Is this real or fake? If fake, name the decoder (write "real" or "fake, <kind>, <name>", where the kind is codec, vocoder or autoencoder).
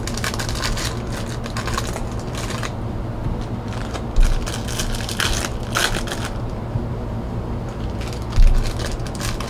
real